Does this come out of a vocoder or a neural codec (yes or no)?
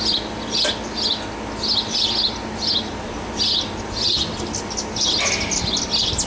no